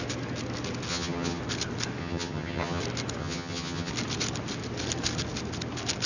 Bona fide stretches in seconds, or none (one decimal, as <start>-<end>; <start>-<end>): 0.0-0.9; 1.4-2.0; 2.8-3.2; 3.9-6.1